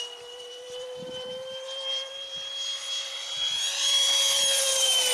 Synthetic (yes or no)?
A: yes